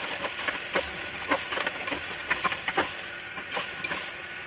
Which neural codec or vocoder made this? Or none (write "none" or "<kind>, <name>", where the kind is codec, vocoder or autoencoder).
none